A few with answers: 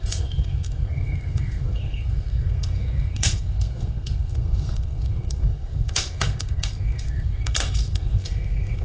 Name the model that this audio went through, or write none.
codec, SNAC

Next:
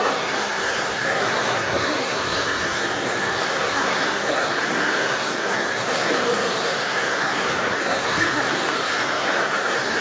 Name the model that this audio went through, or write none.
codec, SNAC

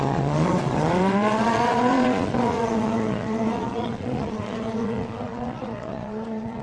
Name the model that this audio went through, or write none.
vocoder, Vocos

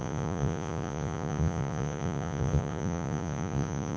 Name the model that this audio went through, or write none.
vocoder, Vocos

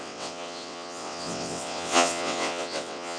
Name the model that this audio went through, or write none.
vocoder, WaveNeXt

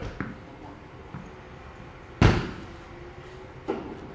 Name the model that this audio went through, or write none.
none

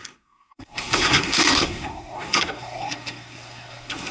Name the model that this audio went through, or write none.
codec, SNAC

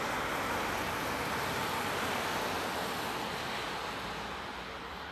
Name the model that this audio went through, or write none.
none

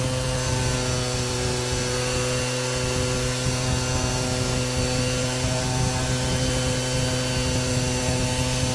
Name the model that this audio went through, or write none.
none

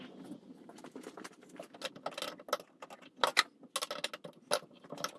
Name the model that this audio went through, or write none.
none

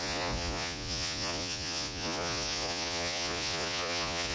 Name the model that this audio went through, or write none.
vocoder, Vocos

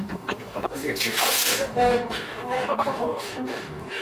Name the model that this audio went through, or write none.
codec, DAC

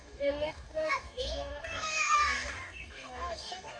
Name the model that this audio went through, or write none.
codec, DAC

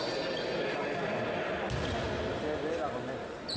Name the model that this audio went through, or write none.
none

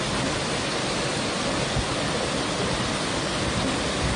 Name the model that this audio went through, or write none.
none